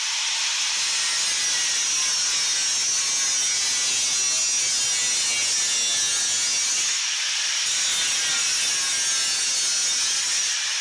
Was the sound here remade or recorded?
recorded